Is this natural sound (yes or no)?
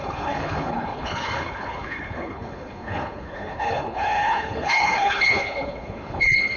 no